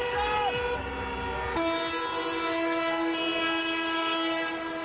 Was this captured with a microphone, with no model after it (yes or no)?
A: yes